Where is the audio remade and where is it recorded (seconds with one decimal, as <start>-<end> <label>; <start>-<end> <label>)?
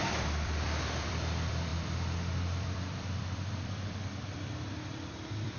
0.0-5.6 remade